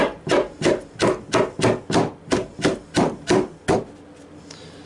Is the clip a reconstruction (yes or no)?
no